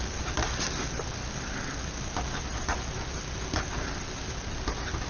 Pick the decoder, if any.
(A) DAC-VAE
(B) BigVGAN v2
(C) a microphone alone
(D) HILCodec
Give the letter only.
C